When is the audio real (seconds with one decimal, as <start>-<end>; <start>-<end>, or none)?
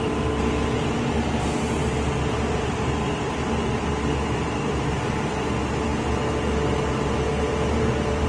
0.0-8.3